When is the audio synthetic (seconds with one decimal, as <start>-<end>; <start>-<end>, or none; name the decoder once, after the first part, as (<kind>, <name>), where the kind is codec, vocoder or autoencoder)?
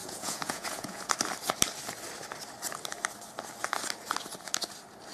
0.0-1.1 (vocoder, Vocos)